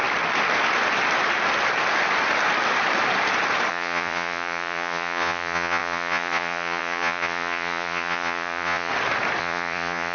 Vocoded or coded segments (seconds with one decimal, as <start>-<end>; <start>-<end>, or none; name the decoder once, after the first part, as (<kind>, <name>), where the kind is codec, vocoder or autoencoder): 3.7-8.9 (vocoder, Vocos); 9.4-10.1

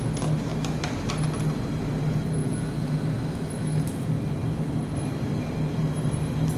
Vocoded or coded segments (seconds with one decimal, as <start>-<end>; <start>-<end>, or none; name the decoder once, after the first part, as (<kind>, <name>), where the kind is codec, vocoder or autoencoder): 2.4-3.0 (vocoder, Vocos)

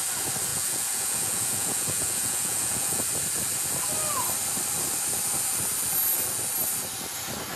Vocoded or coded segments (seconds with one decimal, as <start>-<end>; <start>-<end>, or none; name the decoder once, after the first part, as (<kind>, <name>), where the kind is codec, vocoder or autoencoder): 0.5-3.0 (vocoder, Vocos)

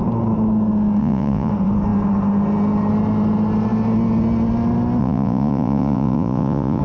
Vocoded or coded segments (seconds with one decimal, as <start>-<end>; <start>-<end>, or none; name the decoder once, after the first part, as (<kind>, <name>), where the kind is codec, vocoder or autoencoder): 1.0-1.5 (vocoder, Vocos); 5.0-6.8

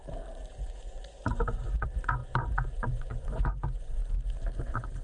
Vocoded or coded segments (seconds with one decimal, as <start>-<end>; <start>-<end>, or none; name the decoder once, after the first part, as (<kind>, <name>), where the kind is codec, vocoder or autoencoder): 0.5-4.0 (vocoder, Vocos); 4.6-5.0

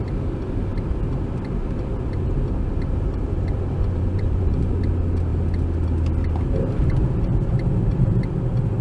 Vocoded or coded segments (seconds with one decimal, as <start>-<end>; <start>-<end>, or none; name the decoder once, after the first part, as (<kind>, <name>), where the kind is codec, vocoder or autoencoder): 3.8-4.8 (vocoder, Vocos)